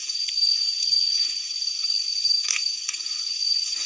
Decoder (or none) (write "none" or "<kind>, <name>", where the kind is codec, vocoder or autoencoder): vocoder, Vocos